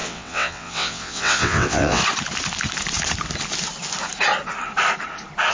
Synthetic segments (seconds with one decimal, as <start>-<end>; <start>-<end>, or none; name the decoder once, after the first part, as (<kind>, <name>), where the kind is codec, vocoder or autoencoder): 0.0-2.0 (vocoder, WaveNeXt)